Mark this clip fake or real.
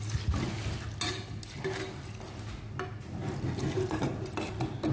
real